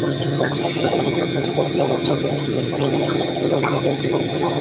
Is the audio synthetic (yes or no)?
yes